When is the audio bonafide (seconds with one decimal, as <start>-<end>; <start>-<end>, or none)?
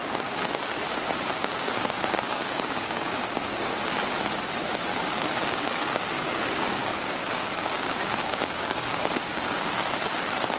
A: 0.0-1.3; 4.0-4.9; 9.7-10.6